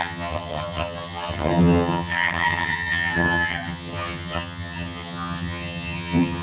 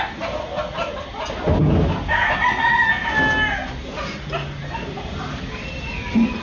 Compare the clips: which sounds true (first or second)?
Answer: second